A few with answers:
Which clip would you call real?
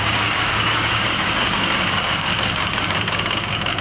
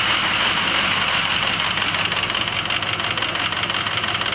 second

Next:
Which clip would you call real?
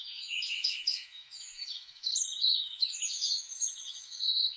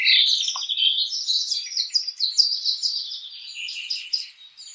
second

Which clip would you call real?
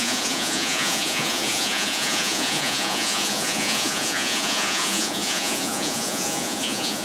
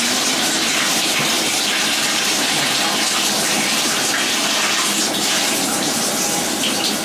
second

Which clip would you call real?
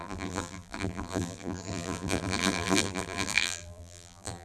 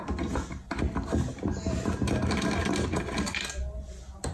second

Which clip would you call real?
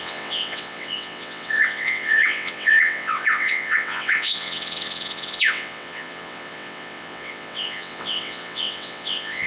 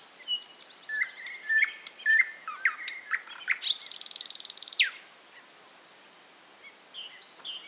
second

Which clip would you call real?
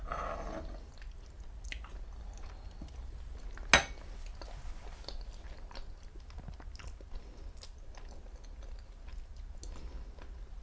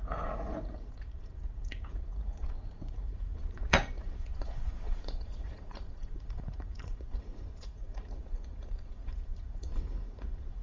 first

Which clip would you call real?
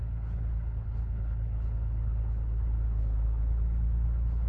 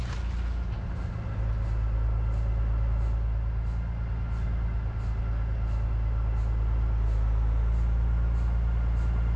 second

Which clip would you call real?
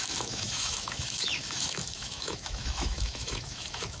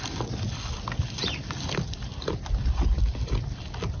second